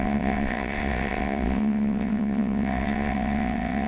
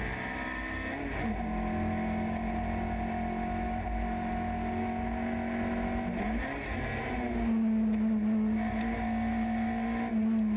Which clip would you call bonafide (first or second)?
second